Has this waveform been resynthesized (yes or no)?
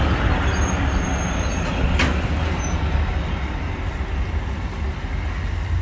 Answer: no